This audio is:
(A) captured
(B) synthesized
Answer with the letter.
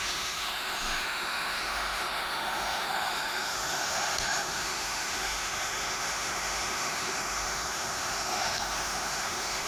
B